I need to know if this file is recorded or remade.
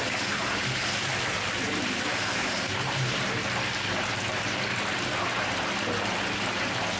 recorded